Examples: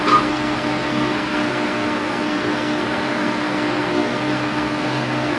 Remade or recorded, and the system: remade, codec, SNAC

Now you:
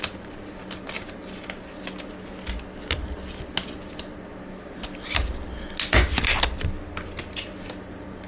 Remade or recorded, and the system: recorded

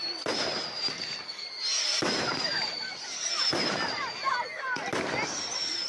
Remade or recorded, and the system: recorded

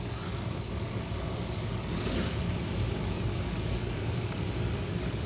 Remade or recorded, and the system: remade, codec, DAC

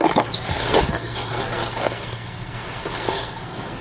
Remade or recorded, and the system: remade, codec, SNAC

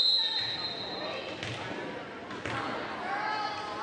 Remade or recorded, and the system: recorded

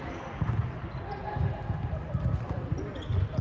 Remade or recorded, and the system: recorded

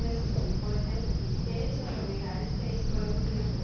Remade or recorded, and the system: recorded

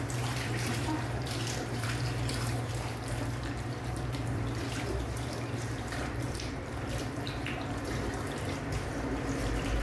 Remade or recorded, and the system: remade, vocoder, BigVGAN v2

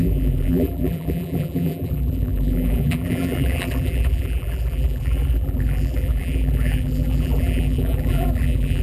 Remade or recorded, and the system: remade, vocoder, BigVGAN v2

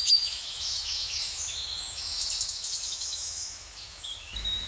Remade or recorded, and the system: remade, autoencoder, DAC-VAE